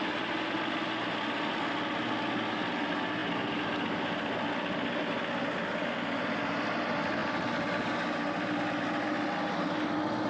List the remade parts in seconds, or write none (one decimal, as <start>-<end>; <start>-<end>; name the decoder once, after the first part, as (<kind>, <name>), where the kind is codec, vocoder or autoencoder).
none